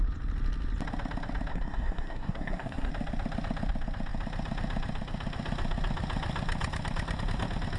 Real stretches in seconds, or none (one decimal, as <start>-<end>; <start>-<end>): 0.0-1.5; 2.9-7.8